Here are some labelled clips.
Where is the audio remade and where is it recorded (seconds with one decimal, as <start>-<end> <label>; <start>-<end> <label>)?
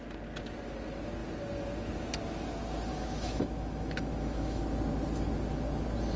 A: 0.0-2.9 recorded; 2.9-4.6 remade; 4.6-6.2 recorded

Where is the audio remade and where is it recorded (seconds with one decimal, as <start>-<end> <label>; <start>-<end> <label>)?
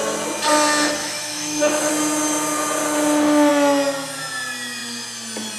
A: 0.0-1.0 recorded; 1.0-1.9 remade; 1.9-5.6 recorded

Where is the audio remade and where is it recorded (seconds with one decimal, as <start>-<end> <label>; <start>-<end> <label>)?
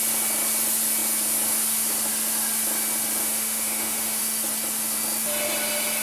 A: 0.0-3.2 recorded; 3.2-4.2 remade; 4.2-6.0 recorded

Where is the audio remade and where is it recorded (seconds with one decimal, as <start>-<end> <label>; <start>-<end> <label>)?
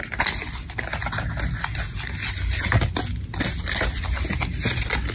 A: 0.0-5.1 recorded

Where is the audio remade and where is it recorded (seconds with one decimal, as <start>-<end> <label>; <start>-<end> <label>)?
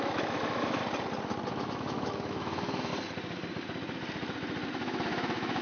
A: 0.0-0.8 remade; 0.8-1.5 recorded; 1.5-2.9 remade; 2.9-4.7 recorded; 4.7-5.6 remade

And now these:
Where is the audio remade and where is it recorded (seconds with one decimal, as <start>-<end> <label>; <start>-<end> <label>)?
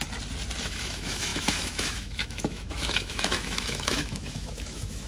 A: 0.0-0.6 recorded; 0.6-5.1 remade